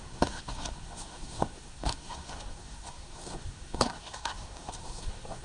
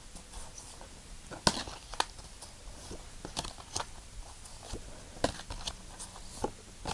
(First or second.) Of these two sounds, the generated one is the first